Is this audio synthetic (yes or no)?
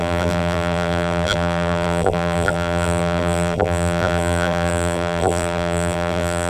yes